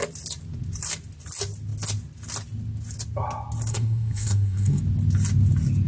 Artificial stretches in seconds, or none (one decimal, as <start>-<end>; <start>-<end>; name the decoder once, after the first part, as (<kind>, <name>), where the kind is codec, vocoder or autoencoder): 3.7-4.8 (codec, SNAC)